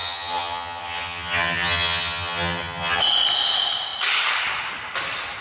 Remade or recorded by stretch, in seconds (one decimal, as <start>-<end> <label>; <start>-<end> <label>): 0.0-3.0 remade; 3.0-5.4 recorded